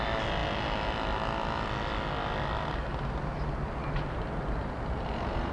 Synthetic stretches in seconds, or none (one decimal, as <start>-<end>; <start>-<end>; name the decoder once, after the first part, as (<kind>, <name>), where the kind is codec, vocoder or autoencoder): none